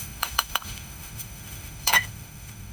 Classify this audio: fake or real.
fake